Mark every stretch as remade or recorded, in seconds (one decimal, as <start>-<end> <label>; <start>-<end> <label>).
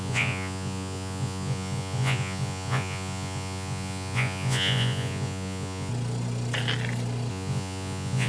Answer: 0.0-5.9 remade; 5.9-7.3 recorded; 7.3-8.3 remade